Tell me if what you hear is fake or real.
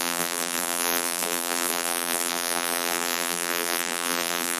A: fake